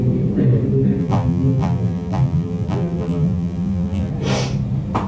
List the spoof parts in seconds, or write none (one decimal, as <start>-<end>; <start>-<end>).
1.0-4.1

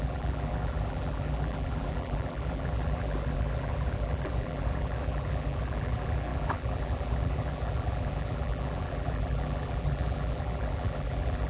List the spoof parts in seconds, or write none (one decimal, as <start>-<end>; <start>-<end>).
0.0-11.5

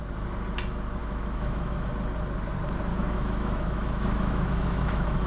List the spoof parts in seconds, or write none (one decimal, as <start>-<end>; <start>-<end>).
1.0-1.9; 2.9-5.3

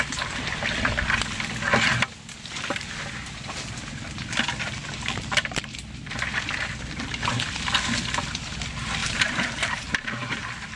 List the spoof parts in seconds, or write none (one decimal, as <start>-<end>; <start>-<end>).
9.0-10.4